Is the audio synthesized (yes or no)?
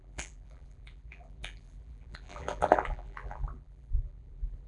yes